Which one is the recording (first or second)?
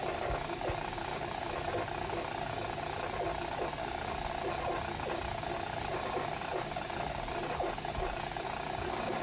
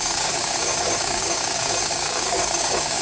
first